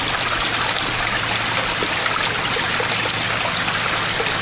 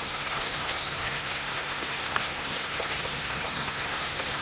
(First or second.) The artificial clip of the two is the second